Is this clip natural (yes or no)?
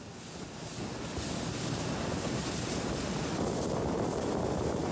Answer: yes